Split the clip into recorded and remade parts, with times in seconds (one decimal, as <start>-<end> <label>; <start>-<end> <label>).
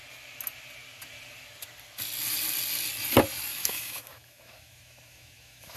0.0-3.5 recorded; 3.5-5.8 remade